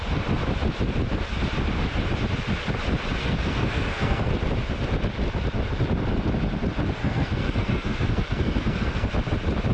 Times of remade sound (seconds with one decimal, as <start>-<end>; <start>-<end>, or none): 3.2-4.3; 7.0-9.1